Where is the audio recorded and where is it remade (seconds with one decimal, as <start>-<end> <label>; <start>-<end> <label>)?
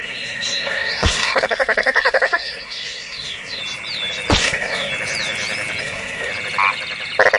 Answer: 0.0-3.6 remade; 3.6-4.4 recorded; 4.4-4.9 remade; 4.9-5.8 recorded; 5.8-6.3 remade; 6.3-7.4 recorded